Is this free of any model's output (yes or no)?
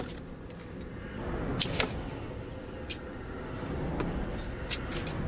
yes